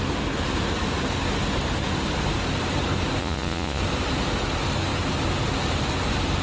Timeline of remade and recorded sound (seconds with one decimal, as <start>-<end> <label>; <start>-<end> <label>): 0.0-3.2 recorded; 3.2-3.8 remade; 3.8-6.4 recorded